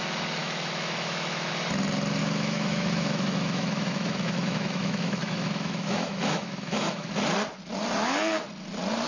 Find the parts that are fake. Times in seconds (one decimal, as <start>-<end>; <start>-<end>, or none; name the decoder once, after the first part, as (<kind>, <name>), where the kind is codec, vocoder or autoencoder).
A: 0.4-1.5 (autoencoder, DAC-VAE); 2.2-7.1